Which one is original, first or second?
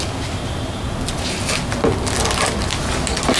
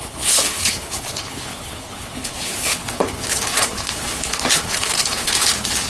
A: first